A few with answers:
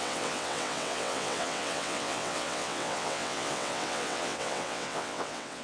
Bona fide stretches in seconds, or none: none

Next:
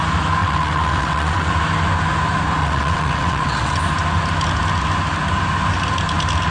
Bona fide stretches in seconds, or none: 0.0-0.4; 1.5-2.6; 3.8-6.5

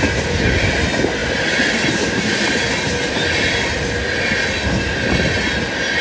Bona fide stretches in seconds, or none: 0.0-6.0

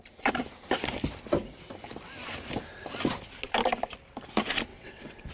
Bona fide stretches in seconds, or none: 0.0-4.7

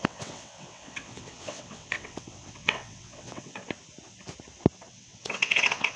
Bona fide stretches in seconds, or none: 3.6-4.9

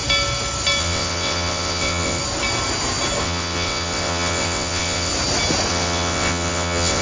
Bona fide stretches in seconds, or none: 0.0-0.8; 2.2-3.2; 5.1-5.7

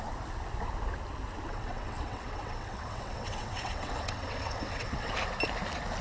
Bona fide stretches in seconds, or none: 0.0-1.5; 5.1-6.0

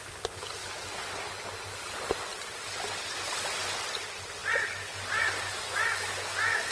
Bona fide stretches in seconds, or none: 0.0-6.7